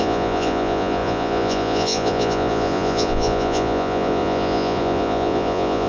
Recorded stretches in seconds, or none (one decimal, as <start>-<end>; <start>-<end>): none